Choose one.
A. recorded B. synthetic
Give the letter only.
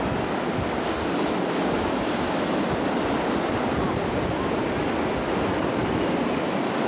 A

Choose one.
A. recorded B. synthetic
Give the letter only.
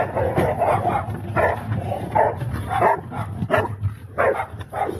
A